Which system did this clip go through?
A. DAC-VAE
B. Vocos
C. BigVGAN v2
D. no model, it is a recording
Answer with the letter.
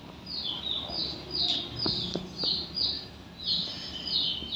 D